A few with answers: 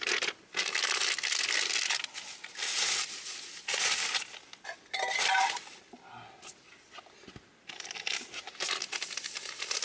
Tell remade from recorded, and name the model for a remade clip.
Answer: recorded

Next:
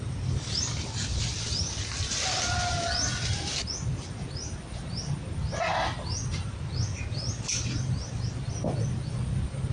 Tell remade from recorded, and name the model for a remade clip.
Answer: recorded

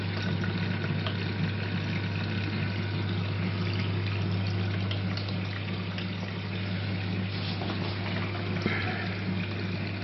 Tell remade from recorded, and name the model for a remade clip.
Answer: recorded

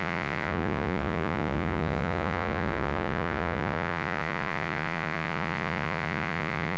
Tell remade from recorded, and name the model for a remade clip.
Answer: remade, vocoder, Vocos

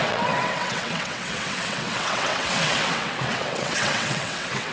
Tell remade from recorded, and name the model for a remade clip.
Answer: remade, vocoder, WaveNeXt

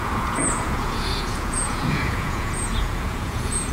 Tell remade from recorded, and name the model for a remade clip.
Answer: remade, vocoder, Vocos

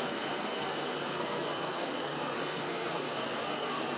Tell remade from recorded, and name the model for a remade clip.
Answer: remade, codec, SNAC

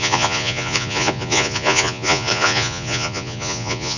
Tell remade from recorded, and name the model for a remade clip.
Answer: remade, vocoder, Vocos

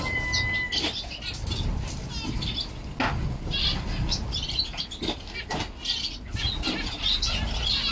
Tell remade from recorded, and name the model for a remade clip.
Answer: recorded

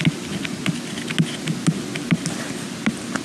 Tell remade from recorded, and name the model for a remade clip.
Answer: recorded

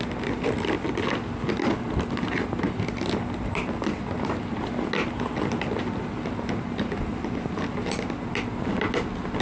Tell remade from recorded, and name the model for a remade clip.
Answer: recorded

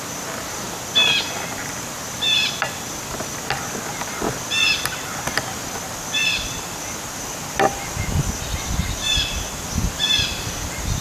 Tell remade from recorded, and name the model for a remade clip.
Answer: recorded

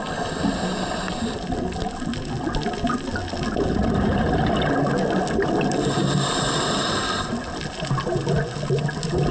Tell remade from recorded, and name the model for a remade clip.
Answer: recorded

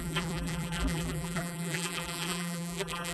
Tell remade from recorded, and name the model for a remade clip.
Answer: remade, vocoder, BigVGAN v2